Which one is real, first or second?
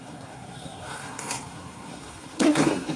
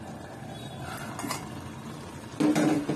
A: second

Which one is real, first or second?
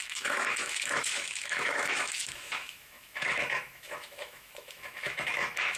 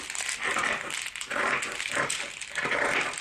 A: second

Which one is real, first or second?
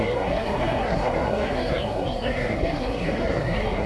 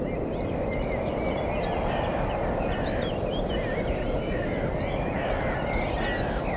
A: second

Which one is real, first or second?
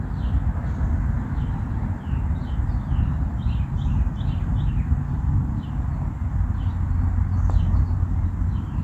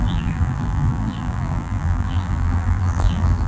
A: first